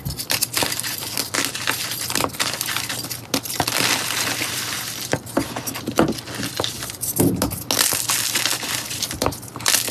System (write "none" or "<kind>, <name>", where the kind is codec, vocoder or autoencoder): none